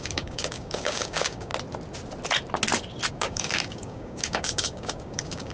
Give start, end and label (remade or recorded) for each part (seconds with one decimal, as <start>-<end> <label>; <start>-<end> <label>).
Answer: 0.0-1.5 remade; 1.5-3.1 recorded; 3.1-5.5 remade